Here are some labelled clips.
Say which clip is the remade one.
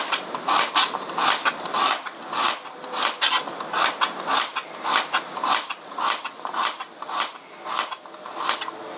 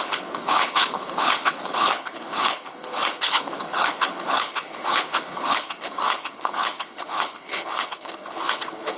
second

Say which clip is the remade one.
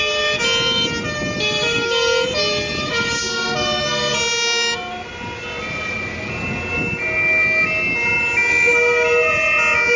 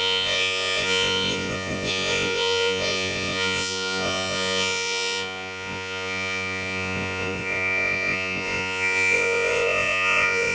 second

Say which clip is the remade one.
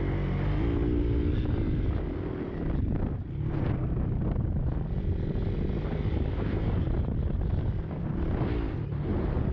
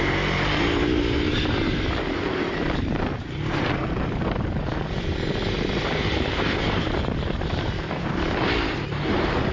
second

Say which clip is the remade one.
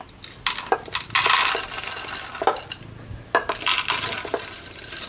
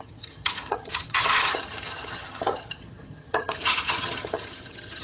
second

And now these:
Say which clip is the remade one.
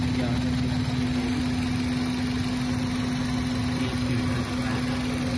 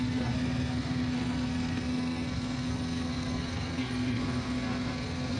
second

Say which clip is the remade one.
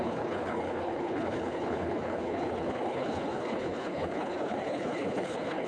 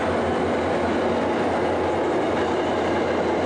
first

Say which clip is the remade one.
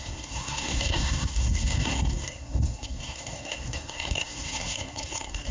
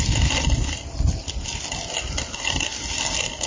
first